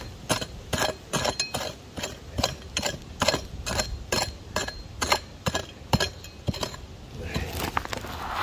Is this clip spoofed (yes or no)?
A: no